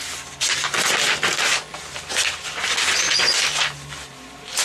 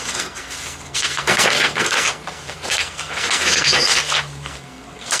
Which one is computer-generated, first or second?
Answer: second